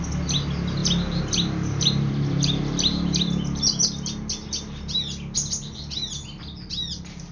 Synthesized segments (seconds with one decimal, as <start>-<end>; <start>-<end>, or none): none